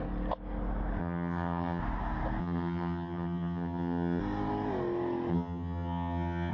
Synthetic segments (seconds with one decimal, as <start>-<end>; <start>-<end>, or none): 1.0-1.8; 2.4-4.2; 5.3-6.5